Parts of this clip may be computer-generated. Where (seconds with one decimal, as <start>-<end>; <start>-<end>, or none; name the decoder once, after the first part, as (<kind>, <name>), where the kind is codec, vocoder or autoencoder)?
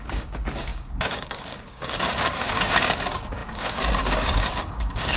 0.0-5.2 (codec, DAC)